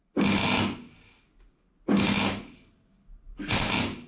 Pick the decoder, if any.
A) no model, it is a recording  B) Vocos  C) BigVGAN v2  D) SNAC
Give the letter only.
A